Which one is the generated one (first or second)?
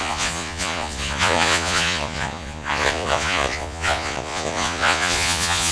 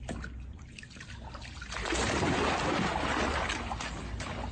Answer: first